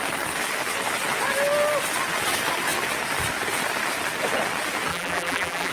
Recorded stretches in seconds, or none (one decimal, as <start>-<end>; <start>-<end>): 0.0-4.9